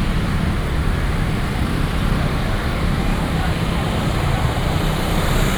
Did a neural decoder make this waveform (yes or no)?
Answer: yes